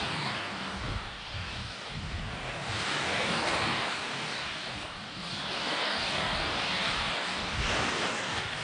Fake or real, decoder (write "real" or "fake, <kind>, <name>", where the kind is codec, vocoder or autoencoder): fake, codec, DAC